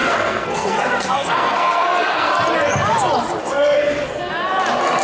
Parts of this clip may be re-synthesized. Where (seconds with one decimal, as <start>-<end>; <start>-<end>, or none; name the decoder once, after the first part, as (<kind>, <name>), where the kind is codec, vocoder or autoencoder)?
0.0-2.3 (codec, SNAC); 3.4-4.3